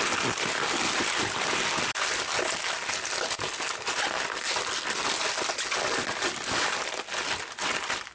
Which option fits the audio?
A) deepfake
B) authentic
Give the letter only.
B